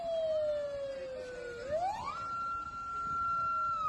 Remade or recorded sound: recorded